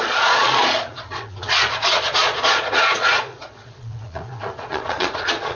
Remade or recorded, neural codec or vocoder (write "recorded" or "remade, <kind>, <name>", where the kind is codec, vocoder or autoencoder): remade, vocoder, Vocos